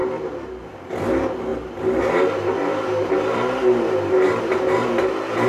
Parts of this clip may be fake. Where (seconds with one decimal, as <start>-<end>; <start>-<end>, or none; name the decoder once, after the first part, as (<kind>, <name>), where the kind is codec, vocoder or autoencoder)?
0.0-0.9 (vocoder, BigVGAN v2); 1.5-4.3